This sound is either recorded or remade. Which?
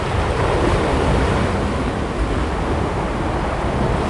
recorded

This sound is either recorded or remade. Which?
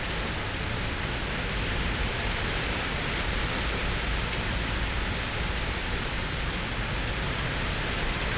recorded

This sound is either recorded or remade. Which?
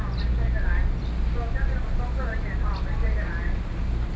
recorded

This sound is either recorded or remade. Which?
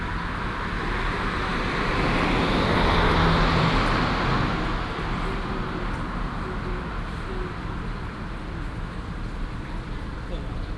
recorded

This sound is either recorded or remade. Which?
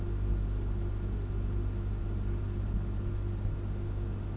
recorded